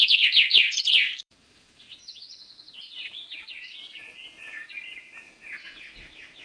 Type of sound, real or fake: fake